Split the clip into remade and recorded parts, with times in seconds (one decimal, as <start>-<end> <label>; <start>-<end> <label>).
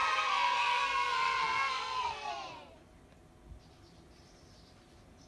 0.0-2.3 remade; 2.3-5.3 recorded